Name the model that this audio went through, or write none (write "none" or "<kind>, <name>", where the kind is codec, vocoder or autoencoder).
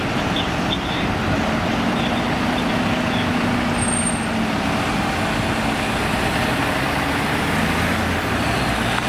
none